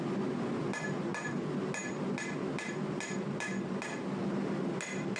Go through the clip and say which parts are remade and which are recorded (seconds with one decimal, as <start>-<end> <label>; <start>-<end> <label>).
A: 0.0-5.2 recorded

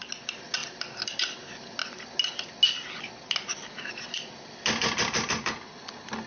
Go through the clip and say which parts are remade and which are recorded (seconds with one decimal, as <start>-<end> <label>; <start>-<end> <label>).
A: 0.0-6.3 recorded

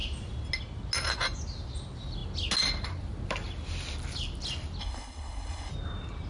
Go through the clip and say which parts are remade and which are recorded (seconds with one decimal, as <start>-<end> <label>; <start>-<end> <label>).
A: 0.0-4.8 recorded; 4.8-5.7 remade; 5.7-6.3 recorded

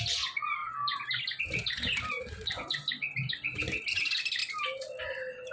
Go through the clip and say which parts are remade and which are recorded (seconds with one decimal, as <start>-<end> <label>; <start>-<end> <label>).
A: 0.0-5.5 recorded

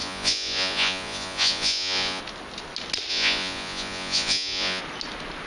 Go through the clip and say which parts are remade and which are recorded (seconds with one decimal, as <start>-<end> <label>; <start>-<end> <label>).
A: 0.0-2.2 remade; 2.2-3.1 recorded; 3.1-4.8 remade; 4.8-5.5 recorded

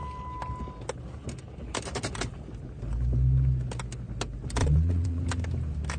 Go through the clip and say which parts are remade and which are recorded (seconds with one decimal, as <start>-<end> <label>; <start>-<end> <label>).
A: 0.0-4.6 recorded; 4.6-5.2 remade; 5.2-6.0 recorded

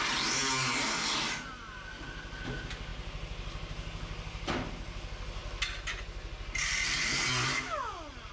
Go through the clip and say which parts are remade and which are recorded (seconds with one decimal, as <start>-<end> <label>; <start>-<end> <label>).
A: 0.0-8.3 recorded